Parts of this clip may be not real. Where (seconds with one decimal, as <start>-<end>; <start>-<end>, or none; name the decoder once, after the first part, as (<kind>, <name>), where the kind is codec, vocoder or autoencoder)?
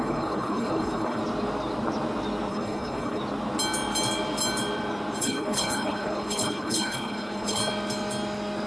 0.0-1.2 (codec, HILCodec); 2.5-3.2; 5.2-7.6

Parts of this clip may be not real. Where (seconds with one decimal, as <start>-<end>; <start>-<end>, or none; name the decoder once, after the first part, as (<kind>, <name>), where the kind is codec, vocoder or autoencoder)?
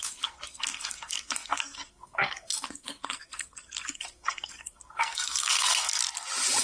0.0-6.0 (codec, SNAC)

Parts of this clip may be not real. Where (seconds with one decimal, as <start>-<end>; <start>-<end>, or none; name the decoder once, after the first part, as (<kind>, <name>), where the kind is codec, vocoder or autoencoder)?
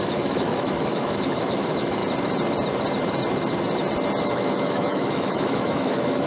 0.0-2.0 (autoencoder, DAC-VAE); 4.2-6.3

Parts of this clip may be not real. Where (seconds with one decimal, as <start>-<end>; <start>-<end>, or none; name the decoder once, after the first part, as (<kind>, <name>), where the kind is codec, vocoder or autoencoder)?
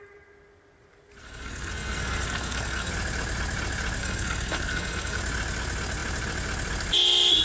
1.2-2.9 (codec, SNAC); 4.0-5.2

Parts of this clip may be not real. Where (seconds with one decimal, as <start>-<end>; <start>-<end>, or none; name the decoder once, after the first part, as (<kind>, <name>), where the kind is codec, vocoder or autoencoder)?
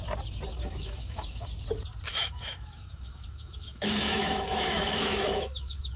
0.6-1.5 (autoencoder, DAC-VAE); 2.1-6.0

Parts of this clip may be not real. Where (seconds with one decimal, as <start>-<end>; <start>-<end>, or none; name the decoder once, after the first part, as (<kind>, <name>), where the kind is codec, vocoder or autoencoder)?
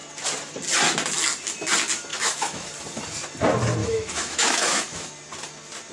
2.1-2.7 (autoencoder, DAC-VAE); 3.8-5.1